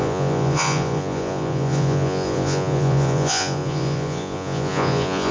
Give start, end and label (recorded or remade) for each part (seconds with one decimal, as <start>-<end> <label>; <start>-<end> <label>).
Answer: 0.0-5.3 remade